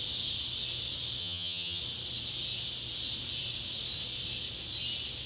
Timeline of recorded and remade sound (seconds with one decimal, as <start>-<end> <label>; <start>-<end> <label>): 0.0-1.2 recorded; 1.2-1.8 remade; 1.8-5.3 recorded